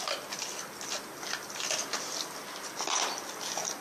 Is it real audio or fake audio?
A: real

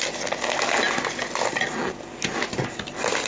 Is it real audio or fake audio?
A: real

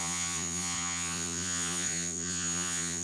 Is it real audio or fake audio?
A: fake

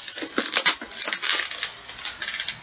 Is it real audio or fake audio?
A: real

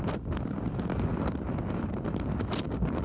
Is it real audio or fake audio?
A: real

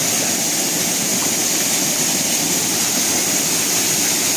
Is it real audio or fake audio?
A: real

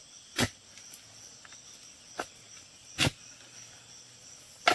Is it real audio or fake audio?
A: real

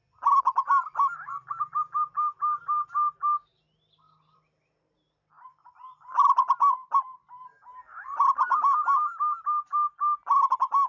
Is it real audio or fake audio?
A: real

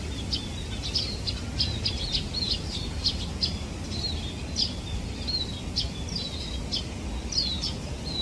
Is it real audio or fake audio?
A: real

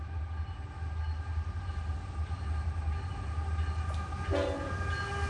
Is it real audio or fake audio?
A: real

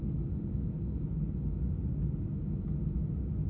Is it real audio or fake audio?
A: real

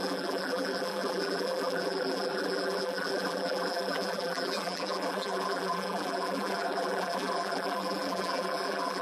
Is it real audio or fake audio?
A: fake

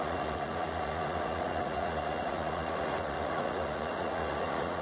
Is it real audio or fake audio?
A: fake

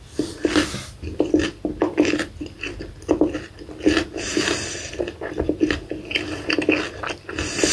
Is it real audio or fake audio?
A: real